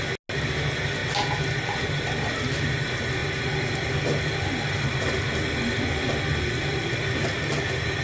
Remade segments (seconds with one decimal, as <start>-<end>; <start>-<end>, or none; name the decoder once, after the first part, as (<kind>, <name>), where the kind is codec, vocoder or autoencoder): none